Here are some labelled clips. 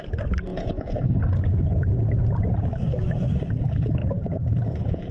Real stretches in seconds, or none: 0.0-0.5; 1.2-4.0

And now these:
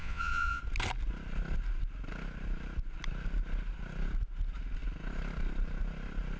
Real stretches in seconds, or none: 0.6-6.4